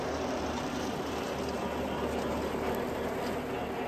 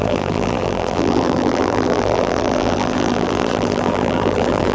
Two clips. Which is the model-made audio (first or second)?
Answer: second